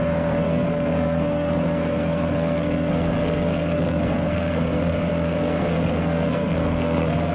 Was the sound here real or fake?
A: fake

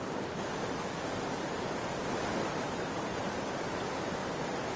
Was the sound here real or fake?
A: real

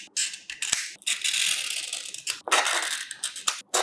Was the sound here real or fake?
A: real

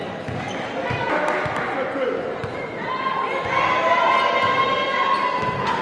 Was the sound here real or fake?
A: real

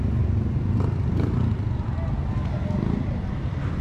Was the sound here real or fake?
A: real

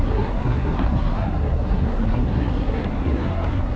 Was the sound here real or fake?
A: fake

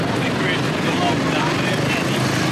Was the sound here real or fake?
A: real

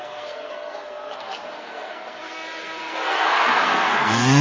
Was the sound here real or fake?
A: fake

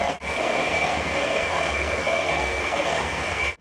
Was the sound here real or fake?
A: fake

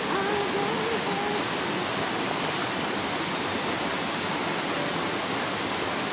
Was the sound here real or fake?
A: real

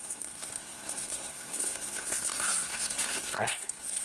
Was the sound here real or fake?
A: fake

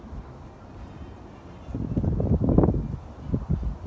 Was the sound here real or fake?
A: real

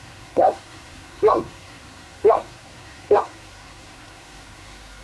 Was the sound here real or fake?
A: fake